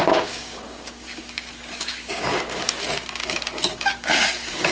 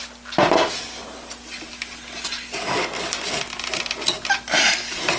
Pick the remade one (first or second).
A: first